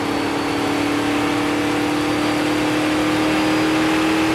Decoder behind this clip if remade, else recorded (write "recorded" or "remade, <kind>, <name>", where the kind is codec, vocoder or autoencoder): recorded